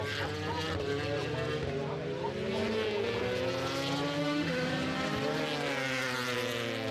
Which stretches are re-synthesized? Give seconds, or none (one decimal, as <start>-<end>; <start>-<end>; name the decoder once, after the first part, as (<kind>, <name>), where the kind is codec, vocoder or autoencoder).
4.2-4.7 (autoencoder, DAC-VAE)